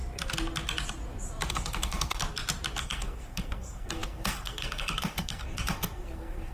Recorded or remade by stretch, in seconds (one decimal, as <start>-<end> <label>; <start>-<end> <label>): 0.0-1.5 recorded; 1.5-2.2 remade; 2.2-2.8 recorded; 2.8-6.5 remade

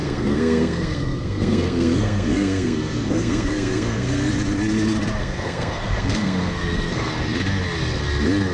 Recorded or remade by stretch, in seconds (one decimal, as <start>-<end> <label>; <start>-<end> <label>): 0.0-4.3 remade; 4.3-5.2 recorded; 5.2-7.1 remade; 7.1-8.5 recorded

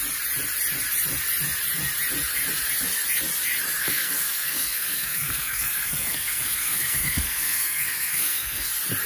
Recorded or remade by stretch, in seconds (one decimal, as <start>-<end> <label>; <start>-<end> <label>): 0.0-3.8 recorded; 3.8-8.7 remade; 8.7-9.1 recorded

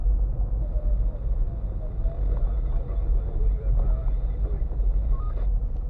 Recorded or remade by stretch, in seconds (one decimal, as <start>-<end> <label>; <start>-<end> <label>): 0.0-5.9 recorded

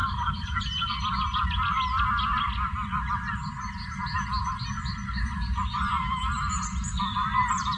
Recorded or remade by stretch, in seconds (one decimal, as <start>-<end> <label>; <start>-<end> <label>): 0.0-7.8 recorded

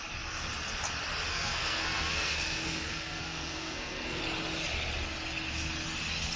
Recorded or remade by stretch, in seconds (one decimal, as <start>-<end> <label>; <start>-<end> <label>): 0.0-1.3 recorded; 1.3-4.2 remade; 4.2-6.4 recorded

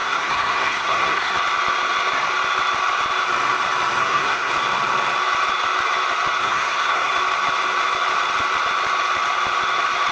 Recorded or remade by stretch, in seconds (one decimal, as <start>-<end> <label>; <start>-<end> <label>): 0.0-1.3 remade; 1.3-4.0 recorded; 4.0-4.5 remade; 4.5-6.4 recorded; 6.4-7.1 remade; 7.1-10.1 recorded

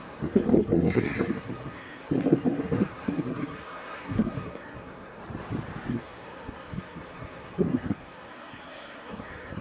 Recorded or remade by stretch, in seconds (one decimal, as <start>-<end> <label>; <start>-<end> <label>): 0.0-5.2 remade; 5.2-5.9 recorded; 5.9-9.6 remade